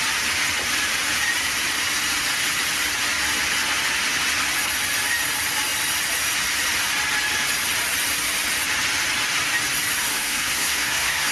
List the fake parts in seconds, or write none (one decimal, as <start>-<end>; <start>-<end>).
10.1-11.3